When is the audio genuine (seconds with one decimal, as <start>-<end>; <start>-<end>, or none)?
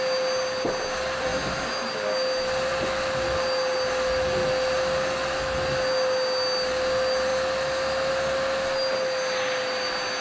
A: 0.0-10.2